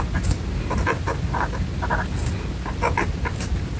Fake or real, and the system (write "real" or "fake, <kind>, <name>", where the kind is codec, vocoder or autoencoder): real